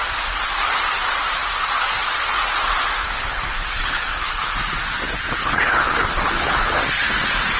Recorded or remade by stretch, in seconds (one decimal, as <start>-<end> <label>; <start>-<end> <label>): 0.0-3.0 recorded; 3.0-4.5 remade; 4.5-5.4 recorded; 5.4-6.8 remade; 6.8-7.6 recorded